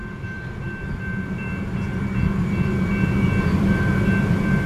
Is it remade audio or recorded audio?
recorded